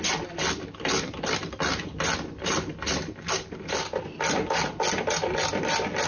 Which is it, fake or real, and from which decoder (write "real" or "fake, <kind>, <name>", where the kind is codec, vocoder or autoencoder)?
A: real